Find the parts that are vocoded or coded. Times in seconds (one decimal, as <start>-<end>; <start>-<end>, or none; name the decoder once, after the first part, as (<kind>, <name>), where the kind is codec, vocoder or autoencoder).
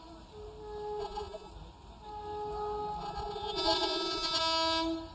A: 1.0-1.5 (vocoder, Vocos); 3.0-4.4